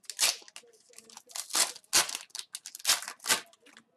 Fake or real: real